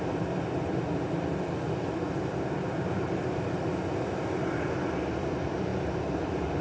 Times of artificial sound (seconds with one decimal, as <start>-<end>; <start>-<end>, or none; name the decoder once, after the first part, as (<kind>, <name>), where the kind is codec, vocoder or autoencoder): none